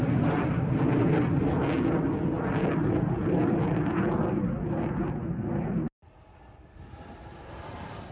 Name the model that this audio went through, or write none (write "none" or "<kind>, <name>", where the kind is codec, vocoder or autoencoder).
none